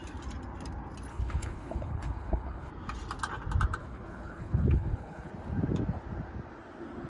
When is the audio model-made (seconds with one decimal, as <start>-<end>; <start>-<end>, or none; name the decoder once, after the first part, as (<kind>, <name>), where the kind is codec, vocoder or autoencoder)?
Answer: 1.1-2.7 (codec, HILCodec); 3.8-5.3